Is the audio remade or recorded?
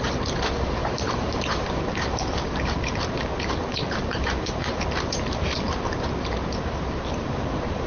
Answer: remade